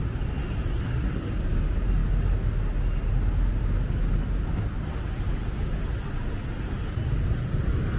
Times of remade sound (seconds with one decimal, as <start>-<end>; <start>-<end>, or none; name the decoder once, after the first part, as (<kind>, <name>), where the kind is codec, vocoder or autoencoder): 0.7-1.3 (codec, SNAC)